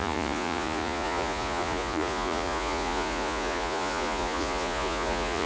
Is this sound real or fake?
fake